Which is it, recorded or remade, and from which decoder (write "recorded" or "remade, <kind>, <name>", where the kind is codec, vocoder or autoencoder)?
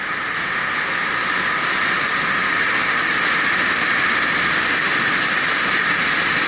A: recorded